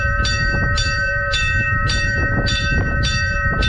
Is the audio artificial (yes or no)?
yes